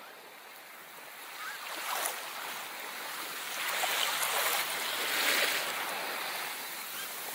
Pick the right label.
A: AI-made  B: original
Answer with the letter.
B